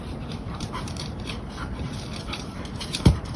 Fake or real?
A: fake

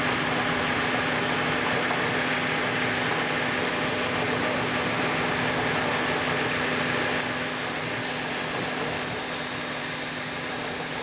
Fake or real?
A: real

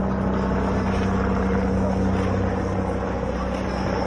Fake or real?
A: real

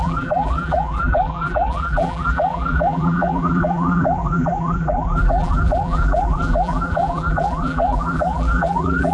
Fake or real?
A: fake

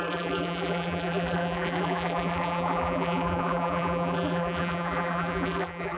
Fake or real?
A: fake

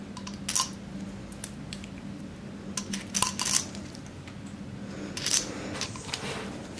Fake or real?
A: real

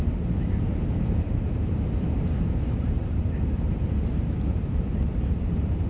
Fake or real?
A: fake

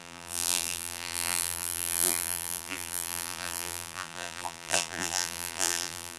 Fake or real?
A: fake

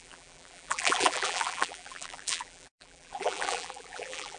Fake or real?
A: fake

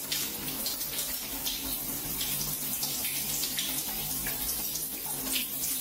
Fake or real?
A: fake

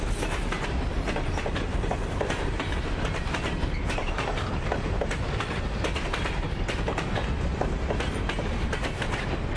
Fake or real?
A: real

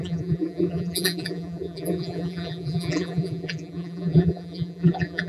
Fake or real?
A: fake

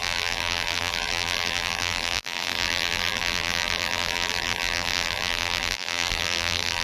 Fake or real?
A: fake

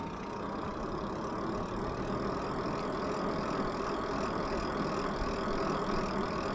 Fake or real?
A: real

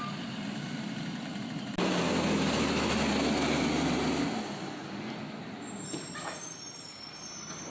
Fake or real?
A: real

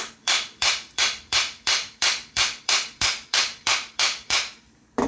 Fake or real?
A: fake